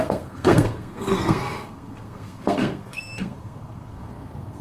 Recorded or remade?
remade